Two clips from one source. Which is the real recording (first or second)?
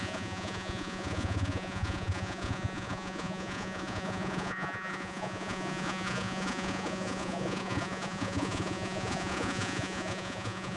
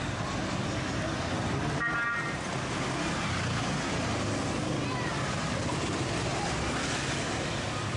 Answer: second